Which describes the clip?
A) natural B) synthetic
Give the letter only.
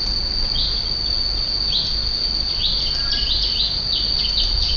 A